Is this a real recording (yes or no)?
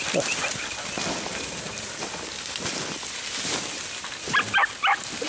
yes